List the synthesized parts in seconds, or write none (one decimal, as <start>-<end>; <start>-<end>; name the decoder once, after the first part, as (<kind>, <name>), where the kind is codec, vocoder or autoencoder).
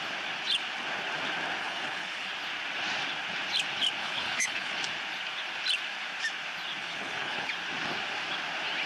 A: 1.6-2.3 (codec, HILCodec); 4.0-4.7; 6.8-7.5